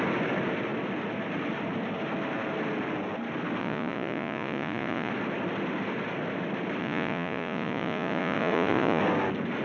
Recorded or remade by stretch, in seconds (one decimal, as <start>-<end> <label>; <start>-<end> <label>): 0.0-3.6 recorded; 3.6-5.1 remade; 5.1-6.8 recorded; 6.8-9.0 remade; 9.0-9.6 recorded